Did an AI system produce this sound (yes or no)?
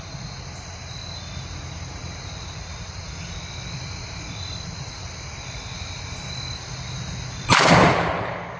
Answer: no